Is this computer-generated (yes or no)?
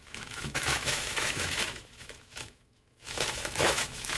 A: yes